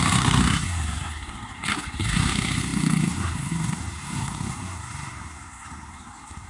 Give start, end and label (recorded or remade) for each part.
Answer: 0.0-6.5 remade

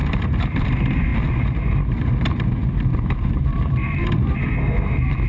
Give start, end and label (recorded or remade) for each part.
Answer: 0.0-0.7 remade; 0.7-1.1 recorded; 1.1-4.3 remade; 4.3-5.3 recorded

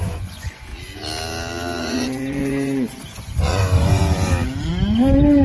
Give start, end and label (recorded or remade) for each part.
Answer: 0.0-0.7 remade; 0.7-1.8 recorded; 1.8-4.0 remade; 4.0-4.7 recorded; 4.7-5.4 remade

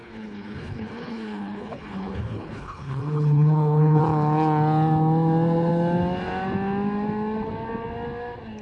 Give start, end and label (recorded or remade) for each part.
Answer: 0.0-4.0 remade; 4.0-8.6 recorded

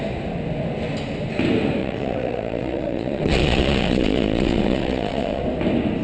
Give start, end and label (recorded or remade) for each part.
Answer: 0.0-1.8 recorded; 1.8-5.4 remade; 5.4-6.0 recorded

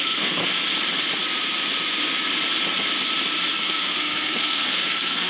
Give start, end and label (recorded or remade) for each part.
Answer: 0.0-0.4 remade; 0.4-3.6 recorded; 3.6-5.3 remade